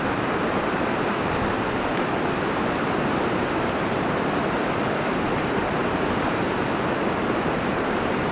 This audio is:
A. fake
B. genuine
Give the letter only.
A